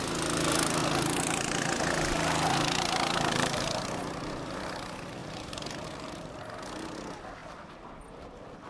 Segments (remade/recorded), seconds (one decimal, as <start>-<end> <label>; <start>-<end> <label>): 0.0-5.2 recorded; 5.2-6.4 remade; 6.4-8.7 recorded